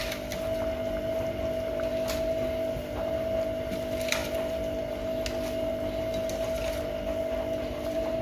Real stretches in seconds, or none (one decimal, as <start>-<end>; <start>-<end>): 0.0-8.2